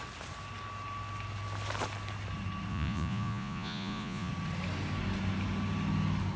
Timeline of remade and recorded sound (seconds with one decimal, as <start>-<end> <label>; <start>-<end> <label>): 0.0-2.7 recorded; 2.7-4.3 remade; 4.3-6.4 recorded